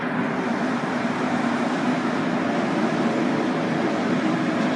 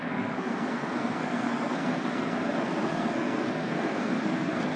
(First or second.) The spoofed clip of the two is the second